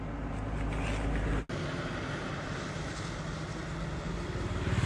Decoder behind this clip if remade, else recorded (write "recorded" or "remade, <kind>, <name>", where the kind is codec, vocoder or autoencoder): recorded